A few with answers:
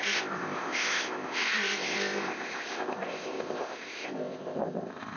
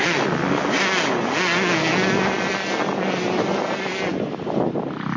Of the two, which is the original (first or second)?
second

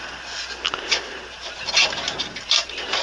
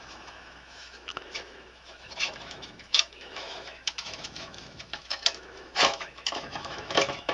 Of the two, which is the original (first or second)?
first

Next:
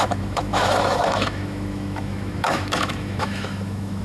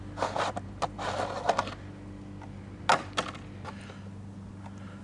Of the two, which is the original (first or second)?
second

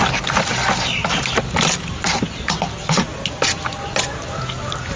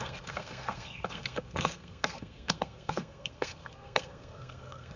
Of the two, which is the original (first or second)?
first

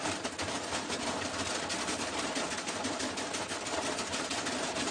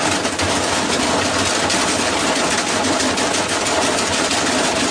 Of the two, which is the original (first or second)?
second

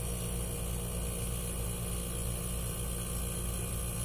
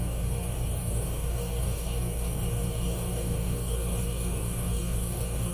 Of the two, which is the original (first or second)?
first